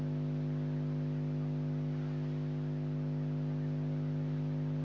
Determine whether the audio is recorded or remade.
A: recorded